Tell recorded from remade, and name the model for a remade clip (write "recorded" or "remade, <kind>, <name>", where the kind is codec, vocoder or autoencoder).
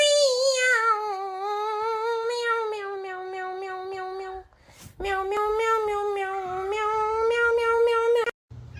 recorded